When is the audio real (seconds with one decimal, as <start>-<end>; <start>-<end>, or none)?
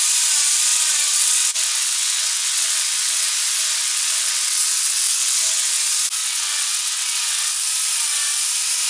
0.0-0.7; 3.3-3.8; 5.8-6.2; 7.5-8.9